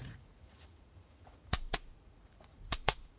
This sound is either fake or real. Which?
fake